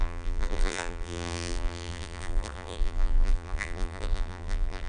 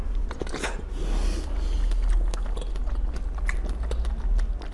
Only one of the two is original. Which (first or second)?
second